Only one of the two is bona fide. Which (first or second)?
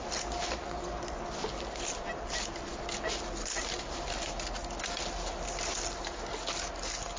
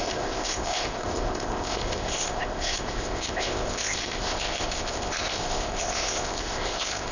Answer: first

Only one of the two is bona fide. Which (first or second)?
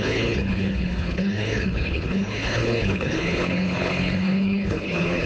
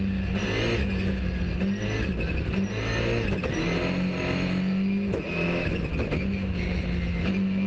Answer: second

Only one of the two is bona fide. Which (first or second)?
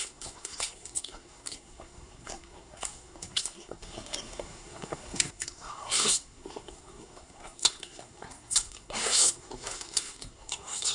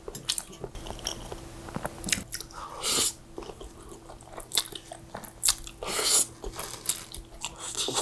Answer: second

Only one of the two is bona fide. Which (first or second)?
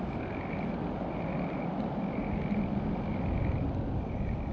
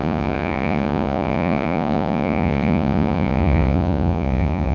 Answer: first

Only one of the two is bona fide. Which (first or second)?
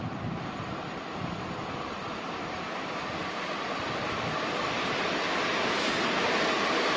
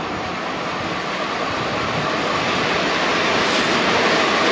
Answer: second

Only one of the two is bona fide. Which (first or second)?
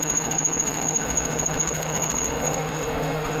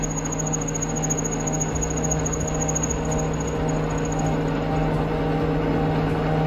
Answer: second